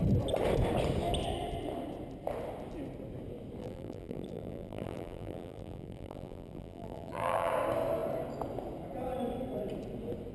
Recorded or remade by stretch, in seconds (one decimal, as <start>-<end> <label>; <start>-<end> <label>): 0.0-3.6 recorded; 3.6-7.5 remade; 7.5-10.3 recorded